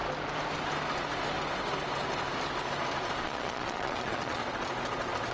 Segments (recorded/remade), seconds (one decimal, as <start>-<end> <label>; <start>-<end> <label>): 0.0-3.2 recorded; 3.2-4.4 remade; 4.4-5.3 recorded